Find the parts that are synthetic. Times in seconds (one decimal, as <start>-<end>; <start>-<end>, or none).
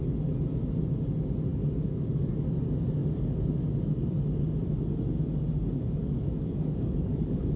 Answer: 1.5-2.3; 6.0-7.6